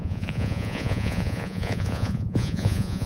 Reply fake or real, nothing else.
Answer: fake